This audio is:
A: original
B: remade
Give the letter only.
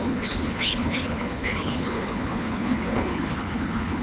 B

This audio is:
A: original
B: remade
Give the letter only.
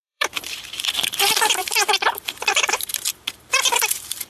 B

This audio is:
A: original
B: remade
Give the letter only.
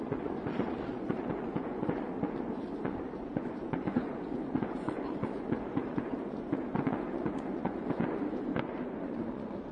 B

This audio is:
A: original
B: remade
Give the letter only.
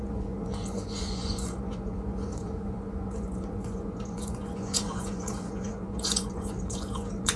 B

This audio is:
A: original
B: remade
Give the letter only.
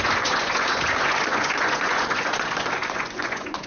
B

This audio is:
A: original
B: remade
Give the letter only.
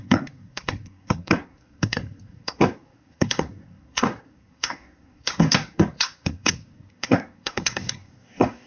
B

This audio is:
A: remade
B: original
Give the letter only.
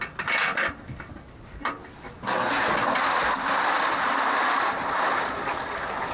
B